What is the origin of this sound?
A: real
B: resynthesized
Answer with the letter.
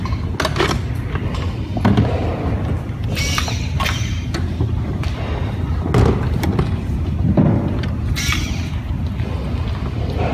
A